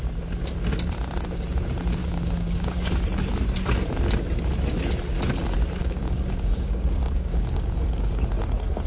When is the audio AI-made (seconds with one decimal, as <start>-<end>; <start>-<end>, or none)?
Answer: 2.0-2.9; 5.8-8.3